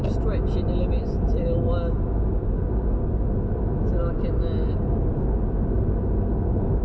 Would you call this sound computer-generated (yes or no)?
no